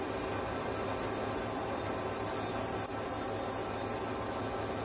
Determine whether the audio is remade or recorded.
recorded